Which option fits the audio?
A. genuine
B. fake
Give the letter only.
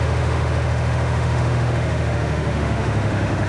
B